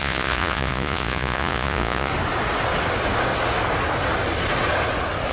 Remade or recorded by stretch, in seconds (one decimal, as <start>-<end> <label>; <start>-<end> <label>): 0.0-2.1 remade; 2.1-5.3 recorded